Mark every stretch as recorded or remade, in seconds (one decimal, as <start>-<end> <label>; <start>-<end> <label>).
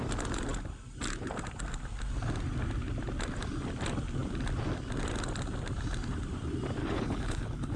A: 0.0-6.8 recorded; 6.8-7.8 remade